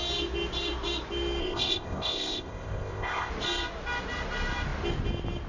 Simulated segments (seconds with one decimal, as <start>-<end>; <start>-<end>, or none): 1.4-3.3